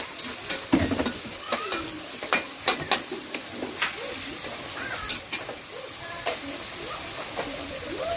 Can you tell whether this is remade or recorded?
recorded